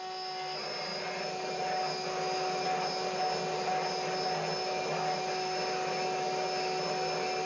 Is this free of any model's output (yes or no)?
yes